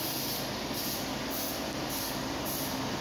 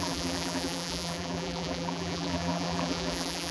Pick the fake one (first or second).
second